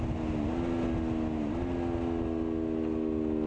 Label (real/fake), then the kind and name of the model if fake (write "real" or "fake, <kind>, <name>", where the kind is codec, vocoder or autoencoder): real